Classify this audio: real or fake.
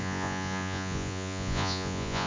fake